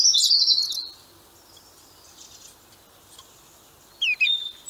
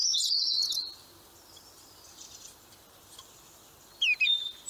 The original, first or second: first